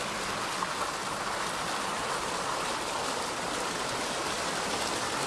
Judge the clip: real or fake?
real